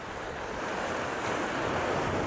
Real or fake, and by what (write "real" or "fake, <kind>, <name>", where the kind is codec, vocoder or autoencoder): real